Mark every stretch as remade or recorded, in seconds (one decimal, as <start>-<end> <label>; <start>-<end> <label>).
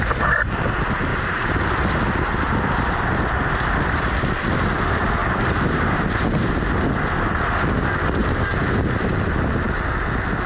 0.0-1.1 recorded; 1.1-1.6 remade; 1.6-5.2 recorded; 5.2-6.5 remade; 6.5-8.2 recorded; 8.2-9.1 remade; 9.1-10.5 recorded